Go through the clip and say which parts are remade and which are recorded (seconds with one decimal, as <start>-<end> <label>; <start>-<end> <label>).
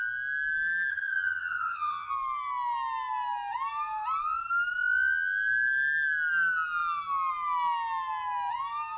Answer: 0.0-0.9 recorded; 0.9-2.1 remade; 2.1-9.0 recorded